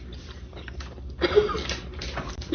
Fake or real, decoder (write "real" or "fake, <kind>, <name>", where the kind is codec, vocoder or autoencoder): real